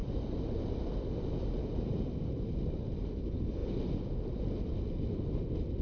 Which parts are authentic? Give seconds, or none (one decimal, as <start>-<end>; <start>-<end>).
0.0-5.8